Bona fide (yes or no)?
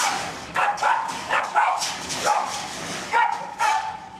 no